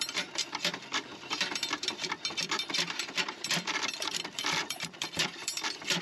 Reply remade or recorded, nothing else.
remade